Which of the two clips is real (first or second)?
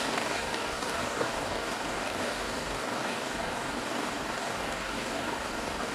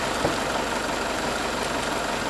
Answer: second